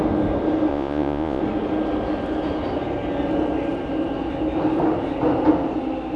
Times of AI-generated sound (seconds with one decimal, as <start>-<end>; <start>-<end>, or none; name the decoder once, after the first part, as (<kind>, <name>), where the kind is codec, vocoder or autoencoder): 0.7-1.4 (vocoder, Vocos)